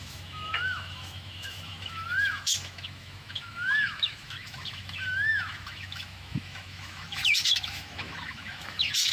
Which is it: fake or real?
fake